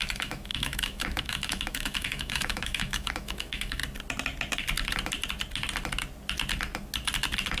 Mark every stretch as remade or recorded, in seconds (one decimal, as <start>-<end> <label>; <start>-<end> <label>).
0.0-3.8 remade; 3.8-7.6 recorded